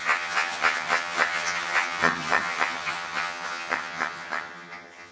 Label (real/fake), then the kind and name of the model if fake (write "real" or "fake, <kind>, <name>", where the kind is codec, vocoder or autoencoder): fake, vocoder, HiFi-GAN